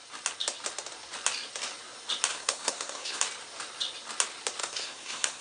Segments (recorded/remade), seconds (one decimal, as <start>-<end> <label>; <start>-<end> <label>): 0.0-2.3 recorded; 2.3-3.2 remade; 3.2-4.6 recorded; 4.6-5.4 remade